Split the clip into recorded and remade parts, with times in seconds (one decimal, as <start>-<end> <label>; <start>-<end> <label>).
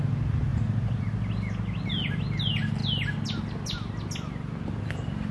0.0-0.5 recorded; 0.5-1.1 remade; 1.1-5.3 recorded